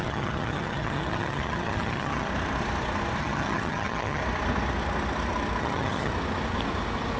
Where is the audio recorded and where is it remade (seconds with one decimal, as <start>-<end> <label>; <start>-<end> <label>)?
0.0-2.3 remade; 2.3-3.2 recorded; 3.2-4.2 remade; 4.2-5.6 recorded; 5.6-6.1 remade; 6.1-7.2 recorded